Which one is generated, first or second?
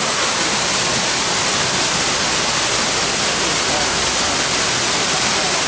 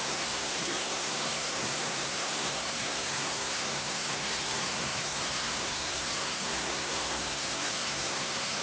second